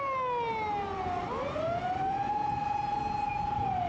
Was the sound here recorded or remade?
recorded